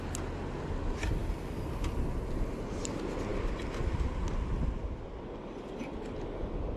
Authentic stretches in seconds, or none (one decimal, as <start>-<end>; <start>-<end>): 0.0-6.8